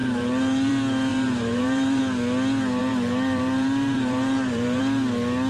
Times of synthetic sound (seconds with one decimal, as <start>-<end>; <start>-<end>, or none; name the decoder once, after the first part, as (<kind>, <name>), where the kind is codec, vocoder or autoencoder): 0.0-0.7 (vocoder, BigVGAN v2); 1.1-2.0; 2.8-4.8

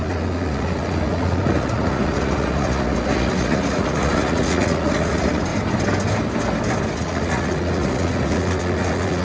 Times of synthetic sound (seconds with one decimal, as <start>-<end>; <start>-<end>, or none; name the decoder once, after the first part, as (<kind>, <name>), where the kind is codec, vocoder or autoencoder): 0.0-5.5 (vocoder, Vocos); 6.9-9.2